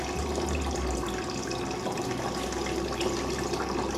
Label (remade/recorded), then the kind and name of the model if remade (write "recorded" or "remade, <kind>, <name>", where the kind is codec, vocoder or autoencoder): recorded